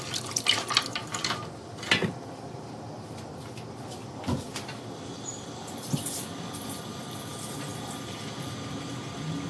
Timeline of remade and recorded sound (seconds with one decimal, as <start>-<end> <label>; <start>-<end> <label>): 0.0-4.0 recorded; 4.0-6.8 remade; 6.8-9.5 recorded